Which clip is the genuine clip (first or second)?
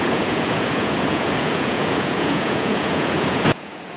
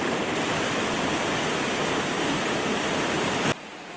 second